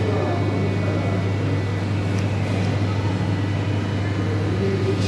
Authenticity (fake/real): real